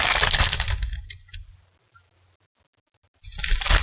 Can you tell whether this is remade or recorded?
recorded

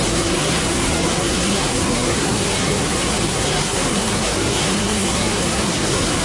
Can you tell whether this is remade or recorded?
remade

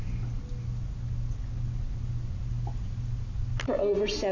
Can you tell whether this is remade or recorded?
recorded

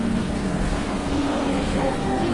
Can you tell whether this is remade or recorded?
remade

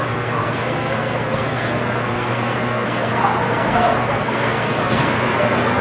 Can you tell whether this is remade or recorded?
remade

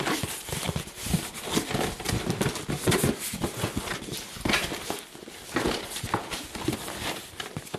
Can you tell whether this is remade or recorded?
recorded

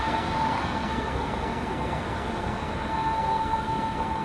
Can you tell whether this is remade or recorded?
remade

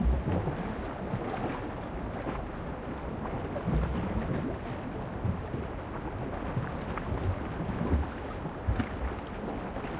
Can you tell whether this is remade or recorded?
recorded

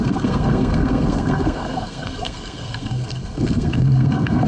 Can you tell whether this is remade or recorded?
remade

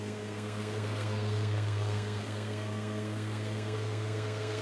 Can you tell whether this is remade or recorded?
remade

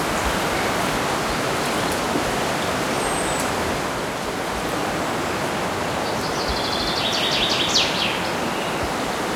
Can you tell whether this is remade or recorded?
recorded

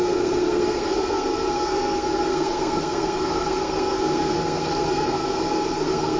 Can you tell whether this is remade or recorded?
remade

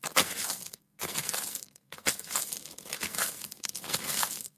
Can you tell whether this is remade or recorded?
remade